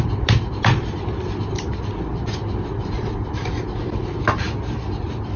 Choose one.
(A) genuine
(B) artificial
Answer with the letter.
A